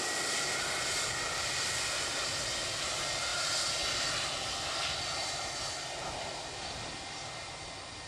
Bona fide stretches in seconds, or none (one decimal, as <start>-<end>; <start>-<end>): 0.0-3.3; 3.8-8.1

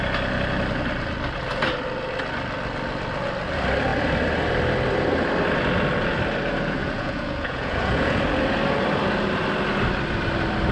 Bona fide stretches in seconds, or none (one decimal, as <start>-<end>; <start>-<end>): 0.0-6.8; 8.2-10.7

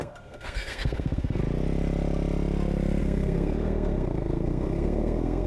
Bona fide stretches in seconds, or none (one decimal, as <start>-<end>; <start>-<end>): 1.4-3.0

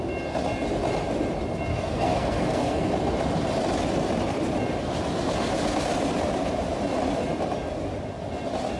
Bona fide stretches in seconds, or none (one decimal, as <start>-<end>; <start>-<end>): 0.0-1.7; 2.9-8.8